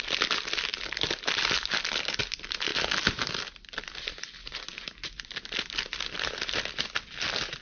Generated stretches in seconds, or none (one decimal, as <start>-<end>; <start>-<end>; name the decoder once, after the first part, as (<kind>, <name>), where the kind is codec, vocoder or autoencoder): none